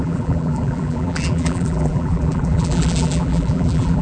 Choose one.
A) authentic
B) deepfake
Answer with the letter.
B